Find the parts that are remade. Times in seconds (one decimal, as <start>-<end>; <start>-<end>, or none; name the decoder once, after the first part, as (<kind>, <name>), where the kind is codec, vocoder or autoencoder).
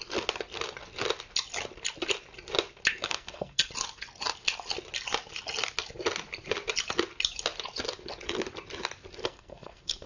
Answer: 2.9-3.7 (codec, SNAC); 9.2-10.1